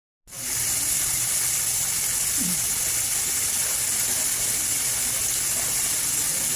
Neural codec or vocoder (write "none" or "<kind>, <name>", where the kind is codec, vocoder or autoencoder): none